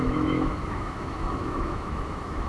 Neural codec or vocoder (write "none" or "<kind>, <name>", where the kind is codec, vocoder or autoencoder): autoencoder, DAC-VAE